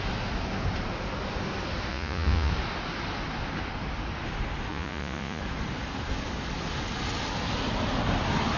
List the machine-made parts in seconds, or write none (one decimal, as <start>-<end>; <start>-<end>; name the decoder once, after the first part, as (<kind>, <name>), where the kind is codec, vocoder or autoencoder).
1.9-2.5 (vocoder, Vocos); 4.7-5.4